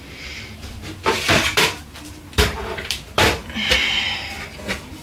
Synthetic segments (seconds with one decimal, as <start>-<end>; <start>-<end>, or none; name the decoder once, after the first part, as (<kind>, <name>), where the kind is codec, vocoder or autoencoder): 0.0-3.4 (vocoder, BigVGAN v2); 4.2-5.0